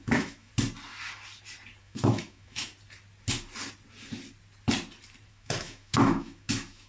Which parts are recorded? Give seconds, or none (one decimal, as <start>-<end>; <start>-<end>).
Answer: 0.5-1.8; 2.7-5.3